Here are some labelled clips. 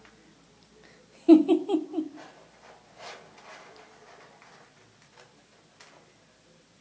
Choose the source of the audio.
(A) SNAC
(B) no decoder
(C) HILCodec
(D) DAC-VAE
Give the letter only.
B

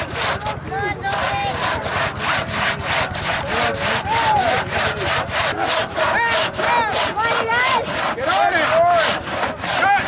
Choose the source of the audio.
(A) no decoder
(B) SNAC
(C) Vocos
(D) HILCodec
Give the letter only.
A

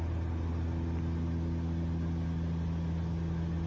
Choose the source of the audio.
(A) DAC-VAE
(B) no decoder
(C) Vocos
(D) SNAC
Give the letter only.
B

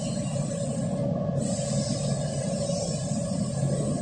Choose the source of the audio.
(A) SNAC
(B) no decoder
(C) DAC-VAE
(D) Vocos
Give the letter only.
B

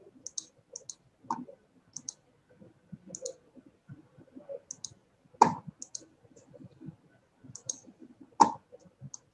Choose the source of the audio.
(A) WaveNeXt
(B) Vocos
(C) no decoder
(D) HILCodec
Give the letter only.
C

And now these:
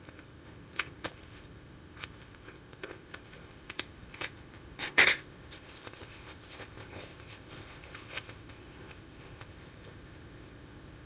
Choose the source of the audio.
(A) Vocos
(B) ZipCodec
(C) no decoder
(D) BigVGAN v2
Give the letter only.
B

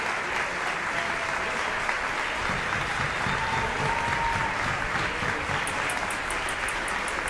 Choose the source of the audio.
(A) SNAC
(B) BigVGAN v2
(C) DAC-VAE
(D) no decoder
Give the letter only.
D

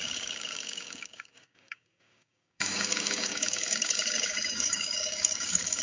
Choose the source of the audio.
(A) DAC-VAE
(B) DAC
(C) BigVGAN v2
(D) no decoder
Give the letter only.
B